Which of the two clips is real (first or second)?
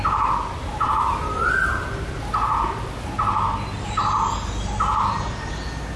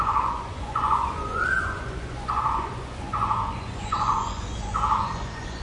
first